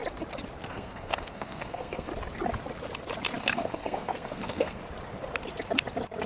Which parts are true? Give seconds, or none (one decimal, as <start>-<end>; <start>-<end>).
0.0-0.7; 2.1-3.4; 4.8-6.3